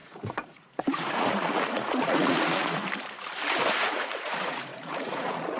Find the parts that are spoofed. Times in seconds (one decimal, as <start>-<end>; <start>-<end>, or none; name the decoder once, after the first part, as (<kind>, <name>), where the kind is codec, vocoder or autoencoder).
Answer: 0.0-2.8 (vocoder, Vocos); 3.7-5.6